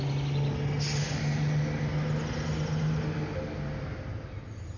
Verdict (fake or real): real